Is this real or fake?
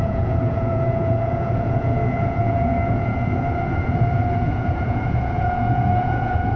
fake